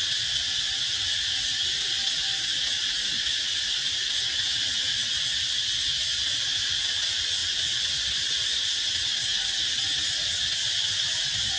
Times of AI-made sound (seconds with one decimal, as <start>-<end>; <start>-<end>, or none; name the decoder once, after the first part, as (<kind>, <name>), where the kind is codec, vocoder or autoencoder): 7.4-8.2 (vocoder, Vocos)